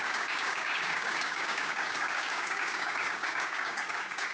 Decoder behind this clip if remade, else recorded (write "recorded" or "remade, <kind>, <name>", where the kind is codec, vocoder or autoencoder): remade, codec, DAC